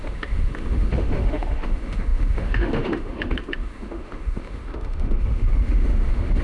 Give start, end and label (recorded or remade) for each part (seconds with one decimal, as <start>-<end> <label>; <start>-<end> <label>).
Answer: 0.0-6.4 remade